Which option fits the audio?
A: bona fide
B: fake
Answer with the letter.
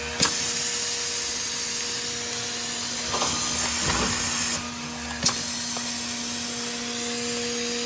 A